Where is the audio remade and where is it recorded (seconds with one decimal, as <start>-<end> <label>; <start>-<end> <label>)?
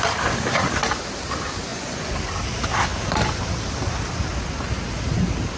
0.0-1.7 recorded; 1.7-2.2 remade; 2.2-5.6 recorded